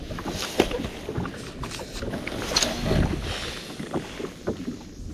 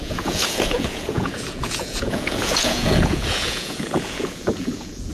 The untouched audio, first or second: first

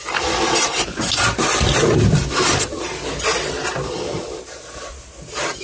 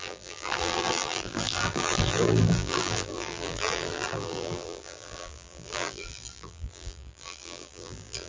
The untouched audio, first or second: first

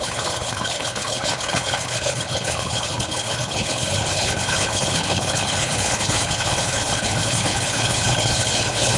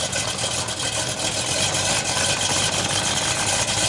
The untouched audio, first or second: second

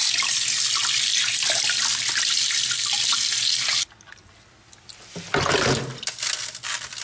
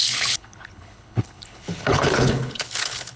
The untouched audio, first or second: first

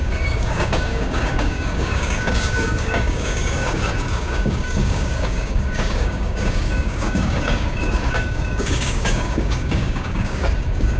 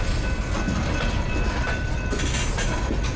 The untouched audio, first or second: second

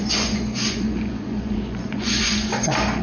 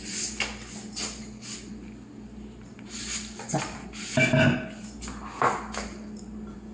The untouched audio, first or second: second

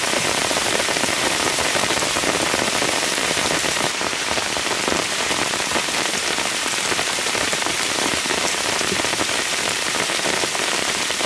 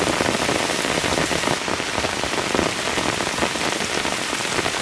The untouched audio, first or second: second